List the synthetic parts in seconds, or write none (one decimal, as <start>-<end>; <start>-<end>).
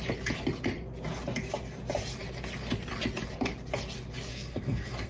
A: 4.3-5.1